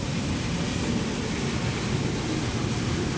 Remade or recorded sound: recorded